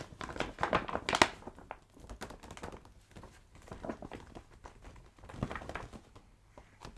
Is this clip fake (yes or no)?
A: no